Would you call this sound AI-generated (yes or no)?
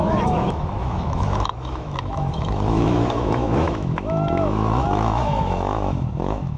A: yes